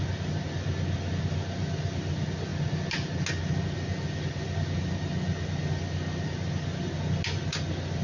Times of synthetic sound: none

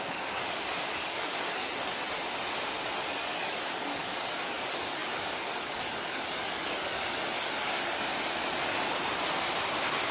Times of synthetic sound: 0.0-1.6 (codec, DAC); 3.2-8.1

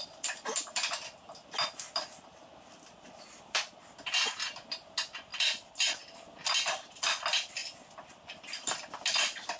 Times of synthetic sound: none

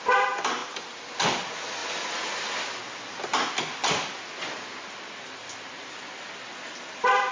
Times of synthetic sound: 0.6-1.1 (vocoder, BigVGAN v2); 1.8-2.8